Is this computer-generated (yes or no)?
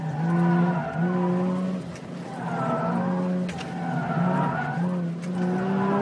no